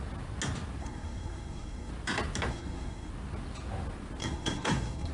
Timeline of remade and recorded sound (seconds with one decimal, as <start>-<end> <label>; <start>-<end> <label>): 0.0-0.8 recorded; 0.8-1.9 remade; 1.9-2.5 recorded; 2.5-3.1 remade; 3.1-4.2 recorded; 4.2-5.1 remade